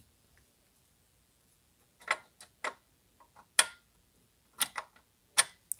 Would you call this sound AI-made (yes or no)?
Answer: no